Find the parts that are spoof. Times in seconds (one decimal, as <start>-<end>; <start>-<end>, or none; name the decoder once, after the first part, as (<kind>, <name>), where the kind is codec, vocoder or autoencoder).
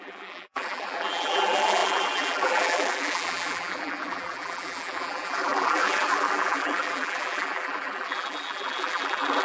0.0-9.4 (vocoder, BigVGAN v2)